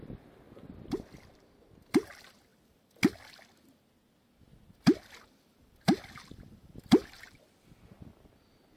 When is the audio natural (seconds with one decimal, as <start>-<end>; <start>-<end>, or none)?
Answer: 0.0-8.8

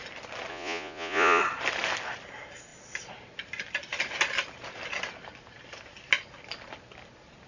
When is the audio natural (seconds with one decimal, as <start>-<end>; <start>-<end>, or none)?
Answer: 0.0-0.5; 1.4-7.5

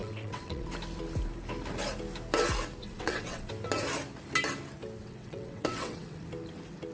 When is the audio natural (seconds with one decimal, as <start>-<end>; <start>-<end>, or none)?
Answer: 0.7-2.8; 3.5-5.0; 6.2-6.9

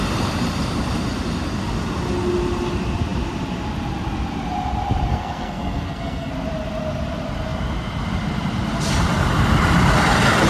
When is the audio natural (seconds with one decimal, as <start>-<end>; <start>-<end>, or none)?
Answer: 0.0-5.1; 6.3-10.5

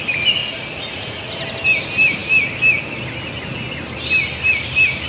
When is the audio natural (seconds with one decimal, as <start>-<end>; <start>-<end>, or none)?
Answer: 0.0-0.4; 1.3-5.1